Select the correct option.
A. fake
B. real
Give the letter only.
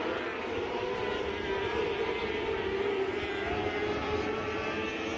B